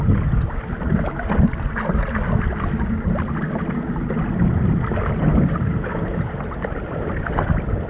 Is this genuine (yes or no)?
yes